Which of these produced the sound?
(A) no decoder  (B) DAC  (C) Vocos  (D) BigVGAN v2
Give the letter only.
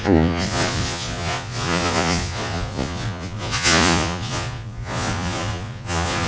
C